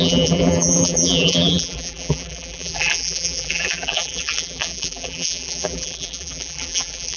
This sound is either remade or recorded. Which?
remade